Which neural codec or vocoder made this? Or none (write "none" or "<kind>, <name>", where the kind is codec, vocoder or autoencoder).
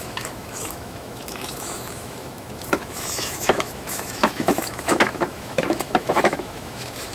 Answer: autoencoder, DAC-VAE